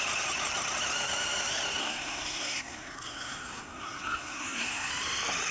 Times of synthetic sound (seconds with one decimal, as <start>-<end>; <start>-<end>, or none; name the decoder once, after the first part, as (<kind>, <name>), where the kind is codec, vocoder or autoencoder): 1.8-4.9 (codec, SNAC)